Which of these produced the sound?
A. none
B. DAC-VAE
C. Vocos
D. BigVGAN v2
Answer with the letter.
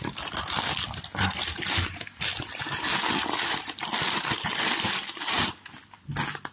A